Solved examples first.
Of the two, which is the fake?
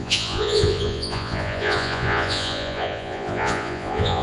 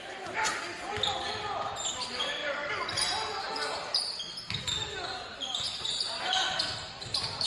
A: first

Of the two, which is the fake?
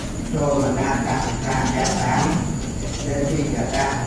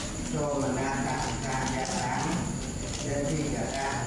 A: first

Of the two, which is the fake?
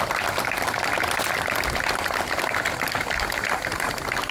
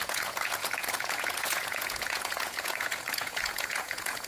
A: second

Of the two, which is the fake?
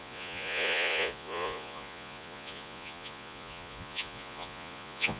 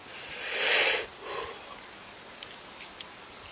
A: first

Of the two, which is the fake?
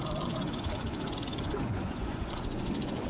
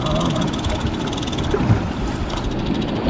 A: first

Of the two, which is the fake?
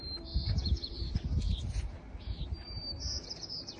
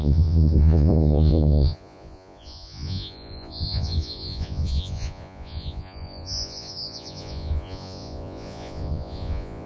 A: second